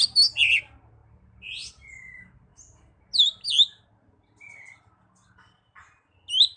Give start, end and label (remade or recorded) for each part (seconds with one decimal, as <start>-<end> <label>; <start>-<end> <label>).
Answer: 0.0-6.6 recorded